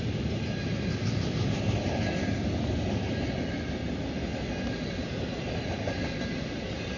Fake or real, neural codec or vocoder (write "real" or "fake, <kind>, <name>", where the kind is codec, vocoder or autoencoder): real